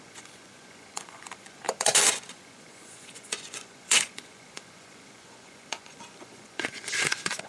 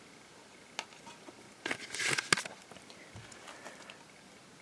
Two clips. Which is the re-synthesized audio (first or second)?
first